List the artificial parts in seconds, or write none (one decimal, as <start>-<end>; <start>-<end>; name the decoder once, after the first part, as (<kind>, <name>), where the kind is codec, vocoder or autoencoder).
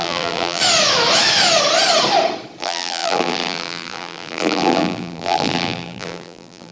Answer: 0.0-0.6 (vocoder, BigVGAN v2); 2.6-6.7